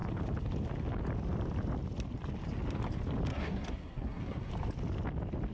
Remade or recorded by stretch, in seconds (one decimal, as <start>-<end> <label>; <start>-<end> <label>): 0.0-3.3 recorded; 3.3-4.5 remade; 4.5-5.5 recorded